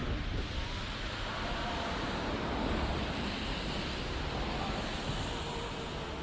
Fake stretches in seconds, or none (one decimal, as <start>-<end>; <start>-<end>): none